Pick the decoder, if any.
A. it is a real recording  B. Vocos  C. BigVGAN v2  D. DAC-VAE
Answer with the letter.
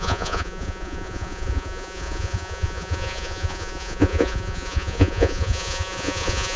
B